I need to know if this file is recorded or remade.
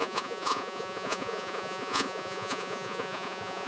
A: remade